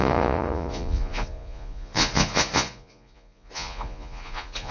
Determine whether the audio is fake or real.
fake